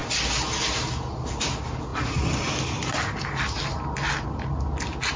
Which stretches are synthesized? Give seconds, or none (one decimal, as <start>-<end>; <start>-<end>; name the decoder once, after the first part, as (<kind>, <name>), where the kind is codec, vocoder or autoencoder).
none